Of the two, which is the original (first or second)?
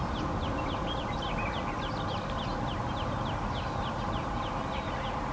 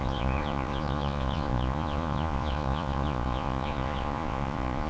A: first